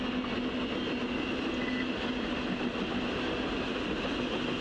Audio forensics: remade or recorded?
recorded